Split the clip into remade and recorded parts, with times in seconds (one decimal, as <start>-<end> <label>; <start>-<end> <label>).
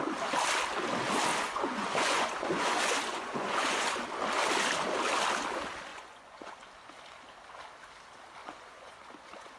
0.0-1.3 recorded; 1.3-4.0 remade; 4.0-5.9 recorded; 5.9-6.7 remade; 6.7-8.4 recorded; 8.4-9.6 remade